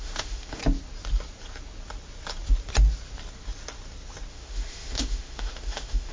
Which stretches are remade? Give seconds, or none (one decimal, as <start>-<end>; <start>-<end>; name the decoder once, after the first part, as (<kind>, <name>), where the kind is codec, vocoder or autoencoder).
0.0-0.6 (autoencoder, DAC-VAE); 4.3-6.1